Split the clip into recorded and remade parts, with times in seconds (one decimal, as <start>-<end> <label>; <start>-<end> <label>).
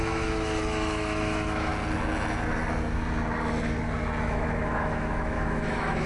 0.0-1.7 remade; 1.7-4.2 recorded; 4.2-6.1 remade